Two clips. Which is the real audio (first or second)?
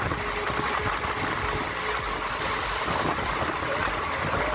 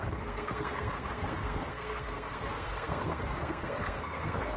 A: first